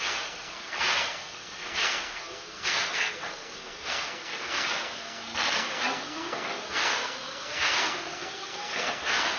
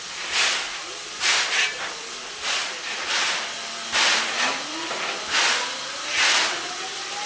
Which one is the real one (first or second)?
second